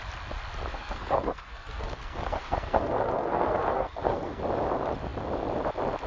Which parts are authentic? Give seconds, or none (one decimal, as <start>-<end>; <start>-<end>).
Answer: 0.0-0.7; 4.4-6.1